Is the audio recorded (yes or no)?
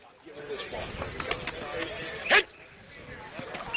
yes